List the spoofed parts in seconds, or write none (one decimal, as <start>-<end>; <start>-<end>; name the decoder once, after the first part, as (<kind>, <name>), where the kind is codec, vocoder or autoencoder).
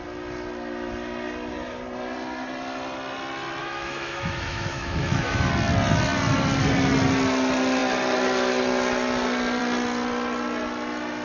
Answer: 3.6-5.5 (autoencoder, DAC-VAE)